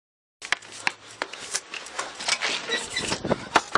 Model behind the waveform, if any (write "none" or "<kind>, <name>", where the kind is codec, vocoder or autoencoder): none